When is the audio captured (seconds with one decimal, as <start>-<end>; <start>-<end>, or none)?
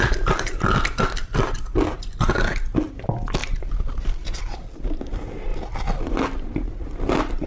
0.0-7.5